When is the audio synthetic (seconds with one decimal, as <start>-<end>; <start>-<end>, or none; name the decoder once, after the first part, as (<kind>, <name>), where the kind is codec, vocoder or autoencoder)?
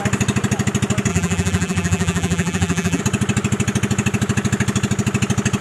1.1-3.0 (vocoder, BigVGAN v2)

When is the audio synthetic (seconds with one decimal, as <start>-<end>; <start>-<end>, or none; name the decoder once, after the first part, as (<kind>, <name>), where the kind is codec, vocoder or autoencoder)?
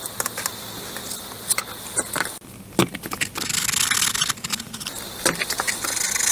none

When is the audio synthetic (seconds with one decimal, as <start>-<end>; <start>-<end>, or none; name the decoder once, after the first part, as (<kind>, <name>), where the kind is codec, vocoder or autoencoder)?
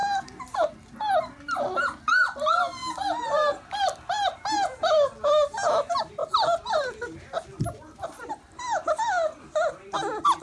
none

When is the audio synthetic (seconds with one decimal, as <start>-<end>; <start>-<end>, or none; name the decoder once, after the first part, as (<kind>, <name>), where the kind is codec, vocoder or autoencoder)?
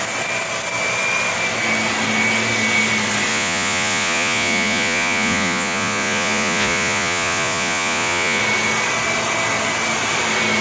3.3-8.4 (vocoder, Vocos)